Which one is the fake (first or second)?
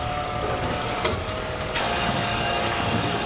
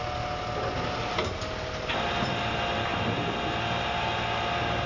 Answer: first